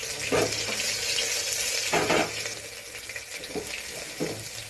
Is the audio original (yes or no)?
yes